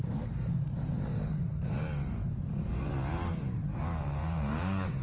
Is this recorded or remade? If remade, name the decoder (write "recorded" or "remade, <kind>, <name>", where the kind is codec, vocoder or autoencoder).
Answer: remade, vocoder, BigVGAN v2